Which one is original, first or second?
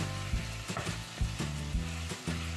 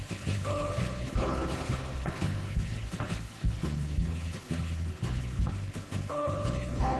first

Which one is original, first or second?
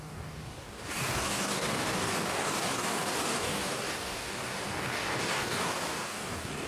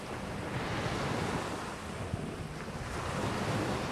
second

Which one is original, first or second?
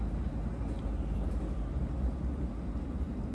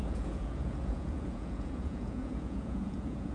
first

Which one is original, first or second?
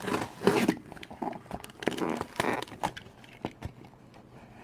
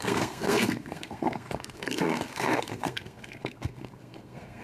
first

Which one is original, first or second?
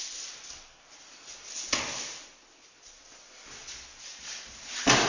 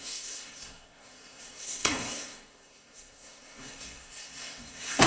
first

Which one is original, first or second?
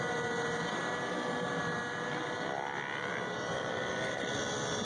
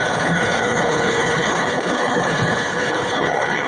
first